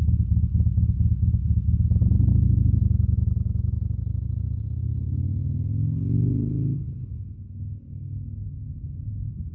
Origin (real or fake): real